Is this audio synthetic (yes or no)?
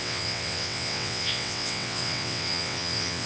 yes